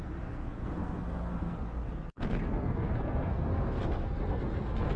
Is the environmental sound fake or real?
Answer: fake